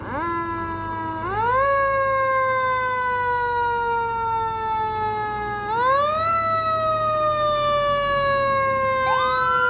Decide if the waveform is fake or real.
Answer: real